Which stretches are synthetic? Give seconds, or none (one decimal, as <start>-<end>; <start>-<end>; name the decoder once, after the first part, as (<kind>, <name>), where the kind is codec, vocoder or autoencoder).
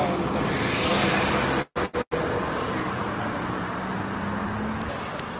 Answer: none